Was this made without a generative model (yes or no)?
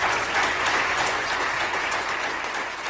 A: no